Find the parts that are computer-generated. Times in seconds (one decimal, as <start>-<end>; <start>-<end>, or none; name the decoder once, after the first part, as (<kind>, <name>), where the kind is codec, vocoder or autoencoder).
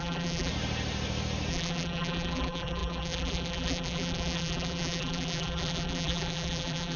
0.0-0.5 (vocoder, BigVGAN v2); 1.5-7.0